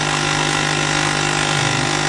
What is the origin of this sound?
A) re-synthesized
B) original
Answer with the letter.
B